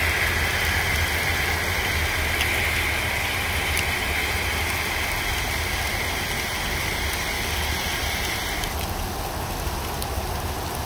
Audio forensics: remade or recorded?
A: recorded